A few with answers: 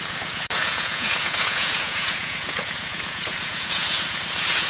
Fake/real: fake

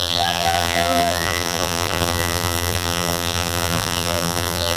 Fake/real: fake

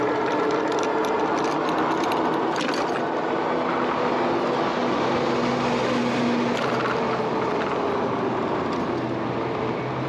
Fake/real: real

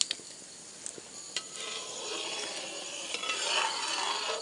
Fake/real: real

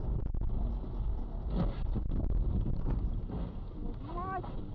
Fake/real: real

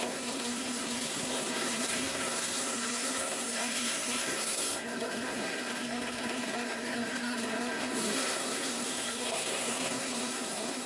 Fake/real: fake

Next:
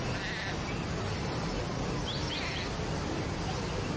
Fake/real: real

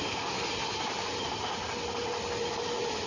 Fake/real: real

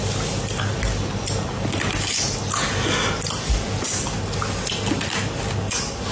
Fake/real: real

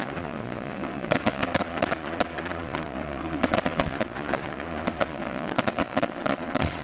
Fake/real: fake